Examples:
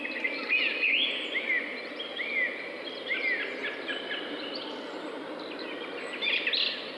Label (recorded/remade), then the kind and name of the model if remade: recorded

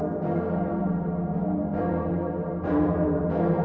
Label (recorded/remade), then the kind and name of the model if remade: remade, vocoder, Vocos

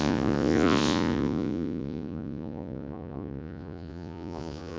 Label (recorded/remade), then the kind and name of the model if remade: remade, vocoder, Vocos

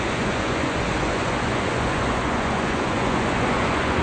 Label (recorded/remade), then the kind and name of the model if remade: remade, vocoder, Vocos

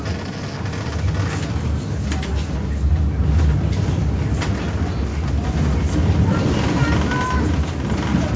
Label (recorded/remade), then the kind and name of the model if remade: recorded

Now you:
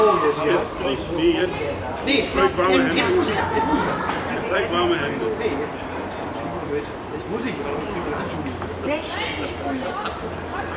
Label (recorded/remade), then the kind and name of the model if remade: recorded